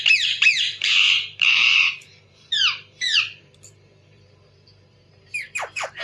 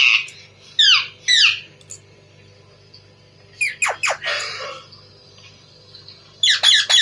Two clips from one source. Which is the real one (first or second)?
second